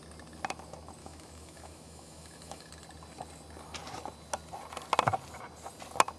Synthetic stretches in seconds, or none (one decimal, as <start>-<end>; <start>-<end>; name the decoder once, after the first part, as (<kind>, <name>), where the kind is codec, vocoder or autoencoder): 1.0-2.7 (autoencoder, DAC-VAE)